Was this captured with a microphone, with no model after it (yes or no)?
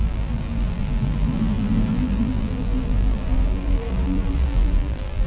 no